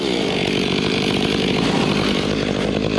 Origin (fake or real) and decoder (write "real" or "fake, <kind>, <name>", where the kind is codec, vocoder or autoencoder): fake, vocoder, BigVGAN v2